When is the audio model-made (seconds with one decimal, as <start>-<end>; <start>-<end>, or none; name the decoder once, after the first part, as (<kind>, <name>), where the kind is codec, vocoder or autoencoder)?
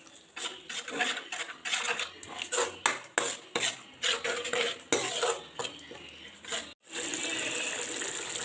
none